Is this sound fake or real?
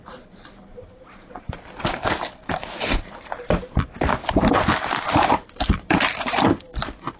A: fake